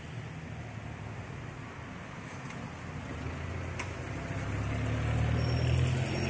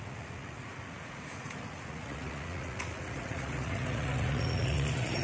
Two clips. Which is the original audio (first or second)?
first